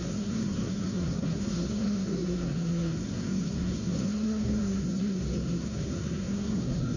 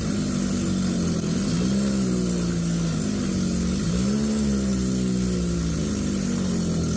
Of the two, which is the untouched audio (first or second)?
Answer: second